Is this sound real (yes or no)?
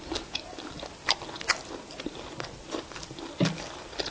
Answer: yes